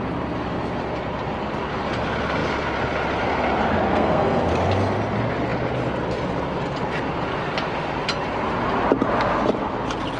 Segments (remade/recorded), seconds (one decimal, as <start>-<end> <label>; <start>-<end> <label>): 0.0-3.9 recorded; 3.9-4.5 remade; 4.5-10.2 recorded